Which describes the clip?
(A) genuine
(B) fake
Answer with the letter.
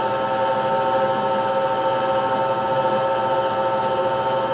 A